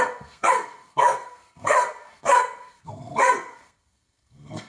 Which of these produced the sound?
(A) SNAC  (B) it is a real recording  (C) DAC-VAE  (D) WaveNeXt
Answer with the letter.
A